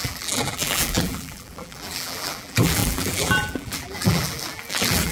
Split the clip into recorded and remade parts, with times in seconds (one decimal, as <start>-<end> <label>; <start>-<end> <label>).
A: 0.0-5.1 remade